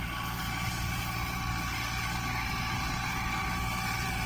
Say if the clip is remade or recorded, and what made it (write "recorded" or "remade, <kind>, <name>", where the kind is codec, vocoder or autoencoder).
remade, vocoder, BigVGAN v2